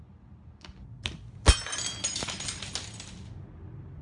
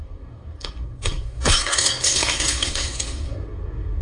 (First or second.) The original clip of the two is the first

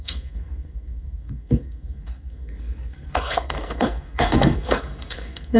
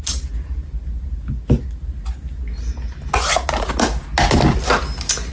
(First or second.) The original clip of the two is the second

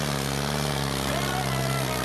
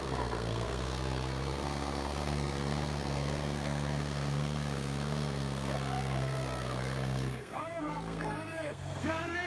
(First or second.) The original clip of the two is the first